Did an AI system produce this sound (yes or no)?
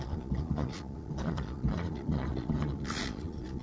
yes